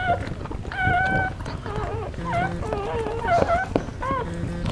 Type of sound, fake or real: real